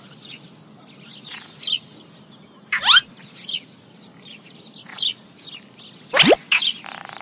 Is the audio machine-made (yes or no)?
no